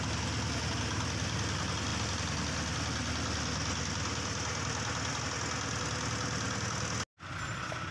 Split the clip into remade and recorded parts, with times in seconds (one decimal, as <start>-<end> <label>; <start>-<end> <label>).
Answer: 0.0-7.9 recorded